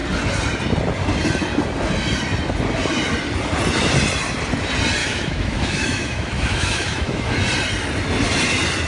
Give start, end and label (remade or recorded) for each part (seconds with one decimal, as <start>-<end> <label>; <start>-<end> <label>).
0.0-5.0 recorded; 5.0-7.3 remade; 7.3-8.9 recorded